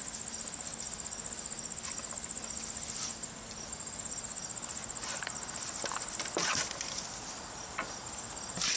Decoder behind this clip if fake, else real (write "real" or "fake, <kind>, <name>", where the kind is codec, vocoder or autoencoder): real